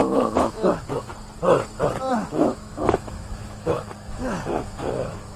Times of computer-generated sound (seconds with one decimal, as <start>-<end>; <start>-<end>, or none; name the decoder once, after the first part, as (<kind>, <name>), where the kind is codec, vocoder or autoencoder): 0.0-1.1 (autoencoder, DAC-VAE); 2.1-5.4